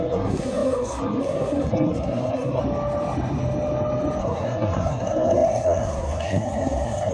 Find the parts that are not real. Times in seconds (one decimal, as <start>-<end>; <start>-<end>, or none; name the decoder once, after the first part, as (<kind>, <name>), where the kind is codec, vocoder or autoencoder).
0.0-2.6 (codec, SNAC); 4.2-7.1